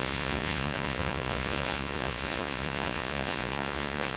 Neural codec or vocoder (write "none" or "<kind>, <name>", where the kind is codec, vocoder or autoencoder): vocoder, Vocos